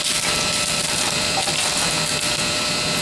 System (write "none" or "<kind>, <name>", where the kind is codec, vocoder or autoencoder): vocoder, BigVGAN v2